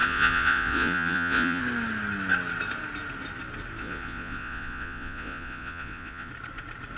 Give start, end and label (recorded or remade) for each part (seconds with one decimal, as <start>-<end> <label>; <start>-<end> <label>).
0.0-1.6 remade; 1.6-3.8 recorded; 3.8-6.3 remade; 6.3-7.0 recorded